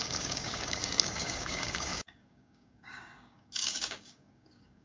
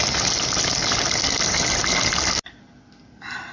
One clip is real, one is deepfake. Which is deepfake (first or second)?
first